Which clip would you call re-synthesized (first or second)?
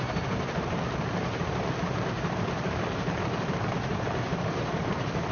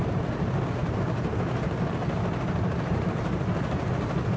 first